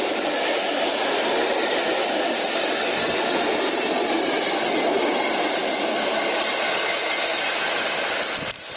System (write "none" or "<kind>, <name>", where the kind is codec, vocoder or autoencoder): none